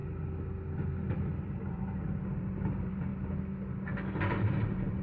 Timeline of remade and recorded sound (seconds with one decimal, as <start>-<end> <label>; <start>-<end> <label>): 0.0-1.4 recorded; 1.4-3.1 remade; 3.1-4.1 recorded; 4.1-5.0 remade